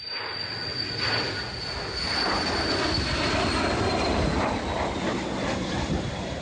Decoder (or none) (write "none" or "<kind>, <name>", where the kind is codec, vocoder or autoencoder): none